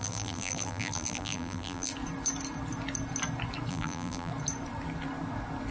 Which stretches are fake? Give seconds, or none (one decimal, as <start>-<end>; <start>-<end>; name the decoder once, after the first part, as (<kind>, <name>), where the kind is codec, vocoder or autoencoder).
0.0-1.9 (vocoder, BigVGAN v2); 3.7-4.3